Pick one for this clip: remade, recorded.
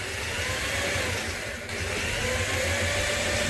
recorded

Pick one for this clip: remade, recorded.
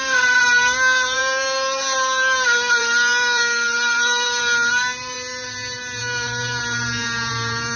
remade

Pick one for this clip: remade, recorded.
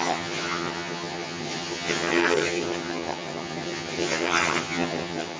remade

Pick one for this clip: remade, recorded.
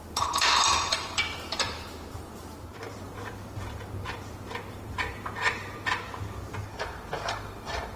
remade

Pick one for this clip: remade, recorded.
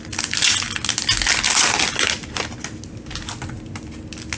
recorded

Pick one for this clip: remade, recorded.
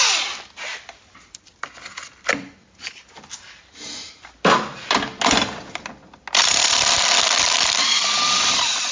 recorded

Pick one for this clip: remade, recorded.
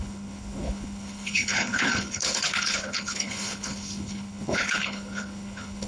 remade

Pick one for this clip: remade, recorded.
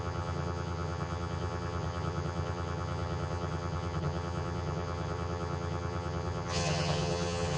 remade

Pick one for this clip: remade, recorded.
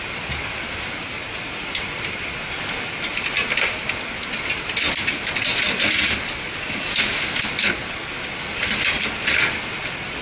recorded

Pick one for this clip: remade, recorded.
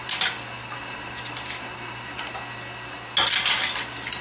recorded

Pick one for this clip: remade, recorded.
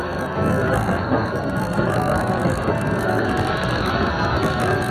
remade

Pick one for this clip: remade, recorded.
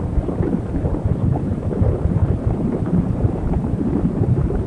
remade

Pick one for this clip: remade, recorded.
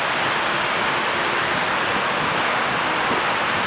recorded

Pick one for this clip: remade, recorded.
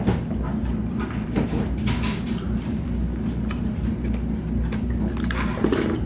recorded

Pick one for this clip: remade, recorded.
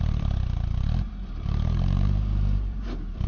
remade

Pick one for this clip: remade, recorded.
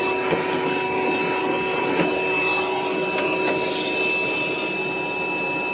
recorded